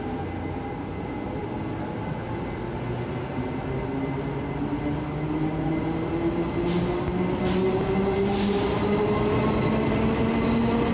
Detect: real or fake real